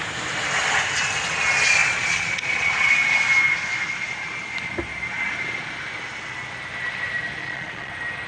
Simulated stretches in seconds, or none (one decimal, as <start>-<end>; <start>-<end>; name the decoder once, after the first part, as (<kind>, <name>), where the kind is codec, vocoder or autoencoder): 1.8-2.9 (vocoder, Vocos); 7.4-7.9